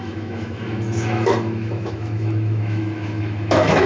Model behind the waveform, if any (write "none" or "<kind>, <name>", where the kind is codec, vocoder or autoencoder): autoencoder, DAC-VAE